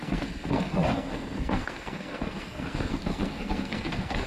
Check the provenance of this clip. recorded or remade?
remade